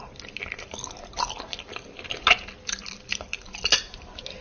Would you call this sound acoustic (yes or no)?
yes